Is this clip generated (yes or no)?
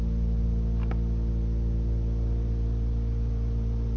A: no